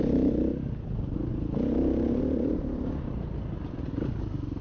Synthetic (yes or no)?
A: no